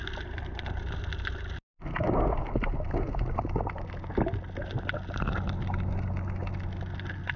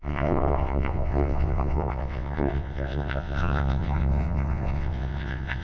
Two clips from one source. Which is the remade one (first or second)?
second